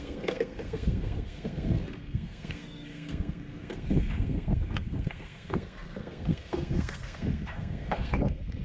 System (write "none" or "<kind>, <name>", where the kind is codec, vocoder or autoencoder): codec, SNAC